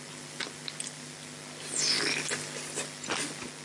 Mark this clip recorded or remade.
recorded